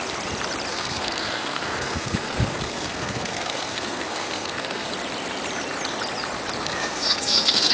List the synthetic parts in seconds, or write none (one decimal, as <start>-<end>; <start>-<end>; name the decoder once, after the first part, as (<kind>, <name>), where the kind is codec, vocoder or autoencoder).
0.7-4.9 (codec, SNAC); 6.6-7.7